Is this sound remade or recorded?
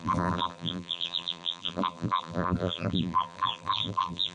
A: remade